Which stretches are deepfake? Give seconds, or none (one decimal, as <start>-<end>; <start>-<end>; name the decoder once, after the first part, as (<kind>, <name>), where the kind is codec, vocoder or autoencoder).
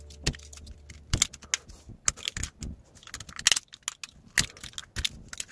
none